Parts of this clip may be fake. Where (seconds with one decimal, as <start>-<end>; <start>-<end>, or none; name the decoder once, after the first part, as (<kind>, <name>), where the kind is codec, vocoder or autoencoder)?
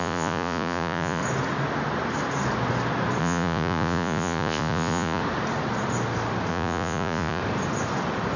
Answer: 0.0-1.2 (vocoder, Vocos); 3.2-5.2; 6.5-7.4